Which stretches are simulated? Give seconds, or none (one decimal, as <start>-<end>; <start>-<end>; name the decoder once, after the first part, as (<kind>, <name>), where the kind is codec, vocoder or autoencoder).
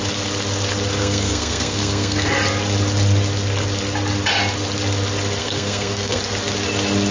1.0-2.3 (codec, SNAC); 5.4-6.2